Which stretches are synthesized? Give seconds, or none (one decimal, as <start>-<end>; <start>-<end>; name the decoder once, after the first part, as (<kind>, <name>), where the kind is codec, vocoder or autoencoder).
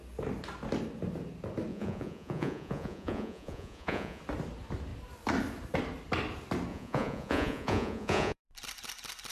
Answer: 1.7-4.2 (vocoder, Vocos); 6.7-8.4